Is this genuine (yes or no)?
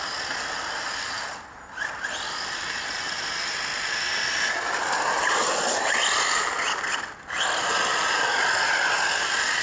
yes